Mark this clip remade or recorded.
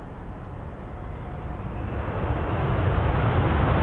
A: recorded